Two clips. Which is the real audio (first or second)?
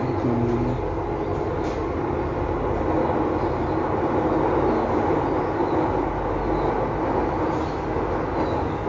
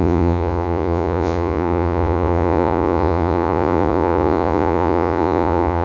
first